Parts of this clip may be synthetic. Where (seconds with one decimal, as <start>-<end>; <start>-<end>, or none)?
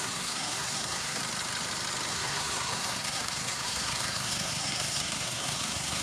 0.0-1.2; 2.1-6.0